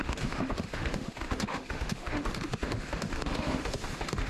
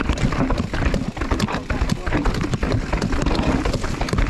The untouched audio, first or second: second